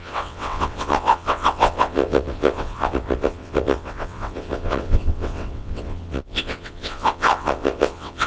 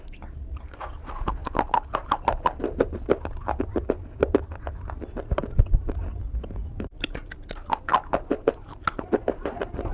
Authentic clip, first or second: second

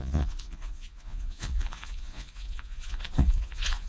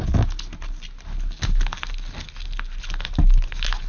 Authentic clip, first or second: second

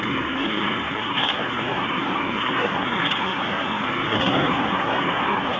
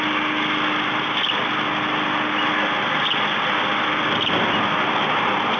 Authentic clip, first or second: second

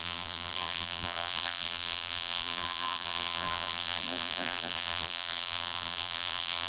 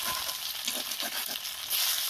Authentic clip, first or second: second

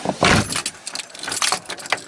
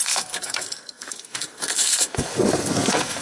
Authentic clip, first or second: first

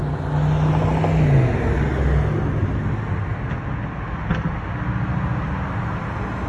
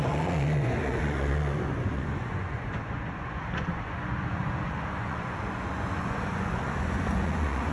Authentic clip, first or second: first